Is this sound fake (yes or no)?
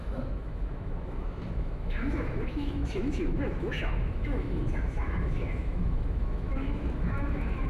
yes